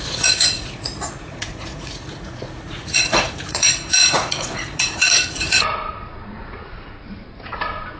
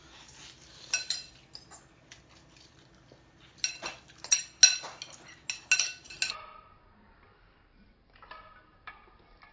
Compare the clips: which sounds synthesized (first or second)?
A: first